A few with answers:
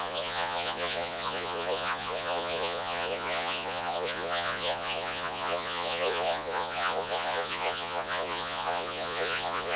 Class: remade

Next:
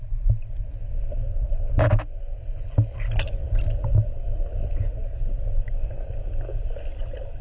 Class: recorded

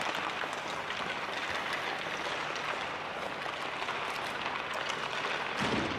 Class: recorded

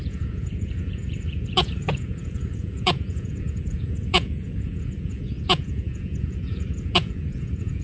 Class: remade